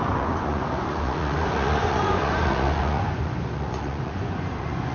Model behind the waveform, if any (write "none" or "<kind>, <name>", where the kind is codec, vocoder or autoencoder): vocoder, Vocos